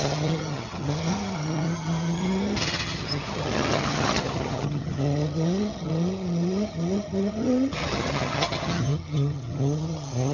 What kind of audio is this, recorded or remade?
remade